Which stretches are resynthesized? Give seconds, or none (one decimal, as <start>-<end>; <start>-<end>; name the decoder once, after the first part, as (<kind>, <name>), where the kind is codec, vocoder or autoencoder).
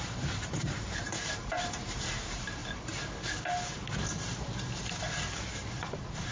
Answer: 0.0-2.6 (vocoder, BigVGAN v2); 5.6-6.3